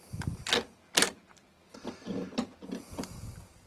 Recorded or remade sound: recorded